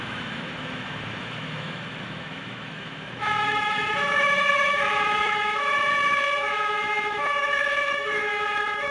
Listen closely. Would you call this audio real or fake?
fake